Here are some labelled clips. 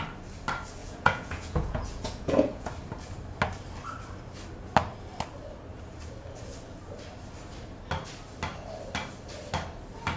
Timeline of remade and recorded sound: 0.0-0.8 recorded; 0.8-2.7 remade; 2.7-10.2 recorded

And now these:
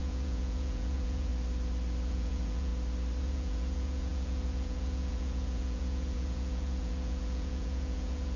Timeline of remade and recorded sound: 0.0-1.3 remade; 1.3-2.1 recorded; 2.1-2.7 remade; 2.7-3.2 recorded; 3.2-8.4 remade